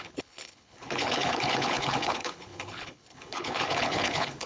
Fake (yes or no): yes